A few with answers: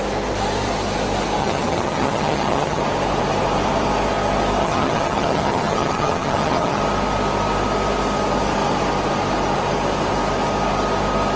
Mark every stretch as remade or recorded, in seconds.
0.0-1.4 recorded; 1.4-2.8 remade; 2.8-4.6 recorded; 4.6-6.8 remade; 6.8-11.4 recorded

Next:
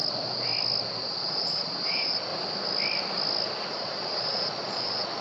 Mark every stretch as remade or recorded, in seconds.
0.0-1.0 recorded; 1.0-2.3 remade; 2.3-3.7 recorded; 3.7-5.2 remade

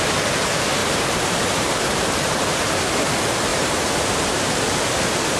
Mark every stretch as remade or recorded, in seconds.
0.0-0.8 recorded; 0.8-2.8 remade; 2.8-3.5 recorded; 3.5-4.7 remade; 4.7-5.4 recorded

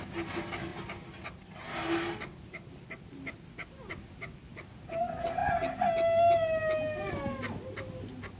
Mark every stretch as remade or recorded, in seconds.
0.0-8.4 recorded